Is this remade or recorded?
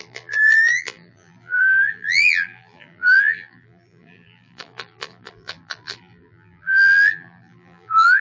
remade